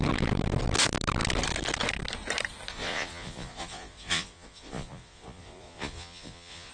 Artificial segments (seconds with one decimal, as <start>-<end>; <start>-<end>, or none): 2.7-6.7